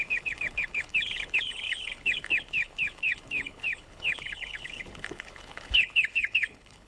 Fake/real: fake